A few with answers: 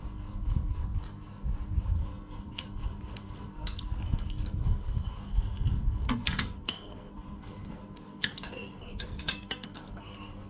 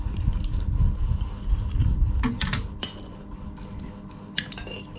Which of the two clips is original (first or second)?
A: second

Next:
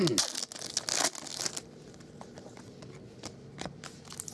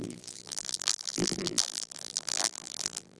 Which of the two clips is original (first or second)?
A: first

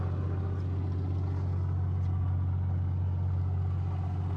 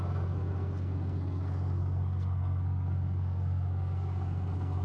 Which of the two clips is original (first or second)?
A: first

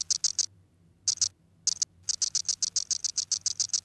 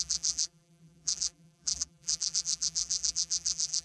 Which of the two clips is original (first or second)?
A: first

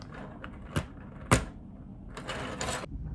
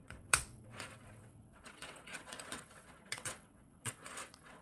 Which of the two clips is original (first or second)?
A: first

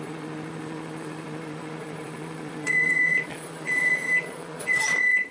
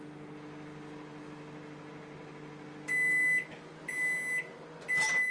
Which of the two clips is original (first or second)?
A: second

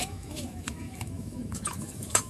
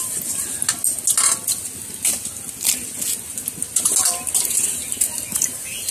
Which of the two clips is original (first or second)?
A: second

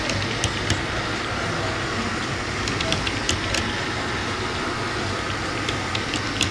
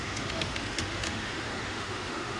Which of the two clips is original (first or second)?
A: first